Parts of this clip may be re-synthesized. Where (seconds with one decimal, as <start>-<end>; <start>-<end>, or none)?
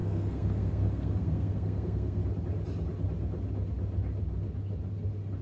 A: 0.0-2.2